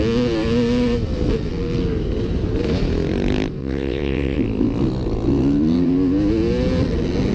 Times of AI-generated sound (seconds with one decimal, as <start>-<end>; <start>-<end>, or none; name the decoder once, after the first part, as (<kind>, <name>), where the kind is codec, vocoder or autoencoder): 3.6-4.4 (vocoder, WaveNeXt)